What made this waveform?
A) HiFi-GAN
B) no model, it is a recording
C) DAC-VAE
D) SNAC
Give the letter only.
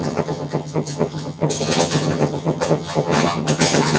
A